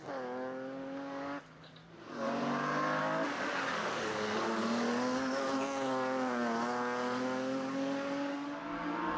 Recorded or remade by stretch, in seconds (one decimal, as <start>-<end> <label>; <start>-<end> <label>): 0.0-1.8 remade; 1.8-3.0 recorded; 3.0-9.2 remade